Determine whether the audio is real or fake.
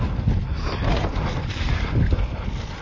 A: real